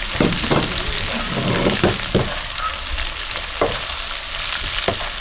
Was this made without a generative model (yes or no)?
yes